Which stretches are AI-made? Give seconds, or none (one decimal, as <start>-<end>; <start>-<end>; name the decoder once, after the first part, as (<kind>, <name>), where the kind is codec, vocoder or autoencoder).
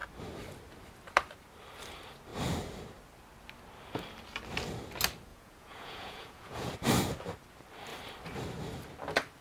5.3-6.7 (vocoder, Vocos)